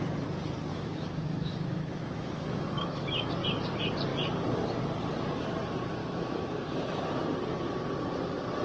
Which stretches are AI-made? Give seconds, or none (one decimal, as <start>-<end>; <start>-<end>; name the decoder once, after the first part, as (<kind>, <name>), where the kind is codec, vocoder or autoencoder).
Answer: 0.7-3.3 (autoencoder, DAC-VAE); 6.0-7.0